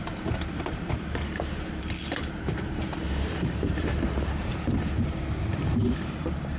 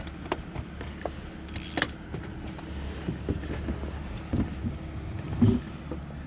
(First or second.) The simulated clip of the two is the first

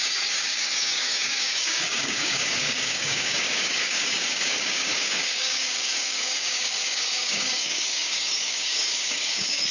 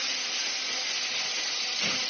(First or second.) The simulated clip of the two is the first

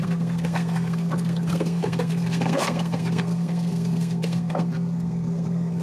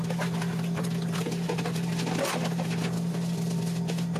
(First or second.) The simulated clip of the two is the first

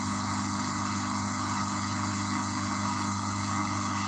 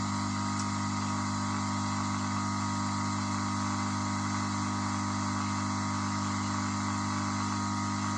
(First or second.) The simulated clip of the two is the first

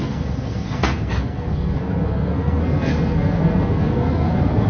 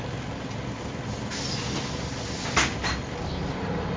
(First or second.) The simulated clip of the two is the first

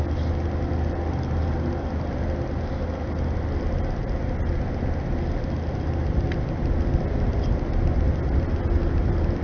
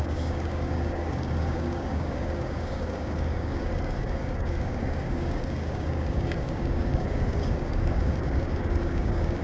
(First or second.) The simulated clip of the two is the second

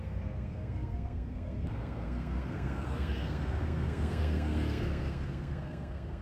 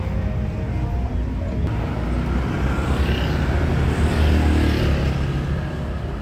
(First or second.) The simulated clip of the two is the first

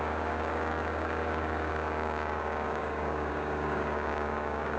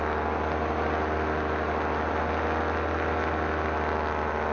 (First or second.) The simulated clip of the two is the first